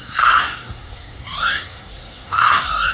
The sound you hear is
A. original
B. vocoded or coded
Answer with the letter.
B